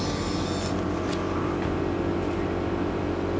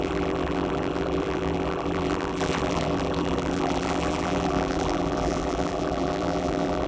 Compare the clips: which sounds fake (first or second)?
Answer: second